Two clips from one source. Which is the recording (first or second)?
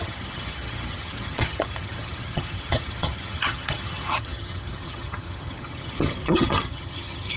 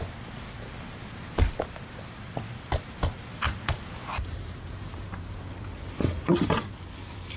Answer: second